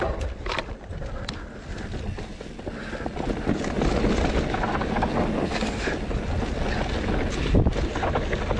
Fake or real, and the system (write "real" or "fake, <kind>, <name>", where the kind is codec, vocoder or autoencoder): real